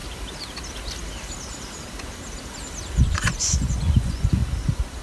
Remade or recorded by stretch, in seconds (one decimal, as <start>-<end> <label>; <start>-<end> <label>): 0.0-3.0 recorded; 3.0-4.4 remade; 4.4-5.0 recorded